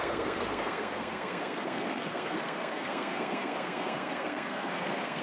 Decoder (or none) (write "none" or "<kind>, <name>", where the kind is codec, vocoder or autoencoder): codec, SNAC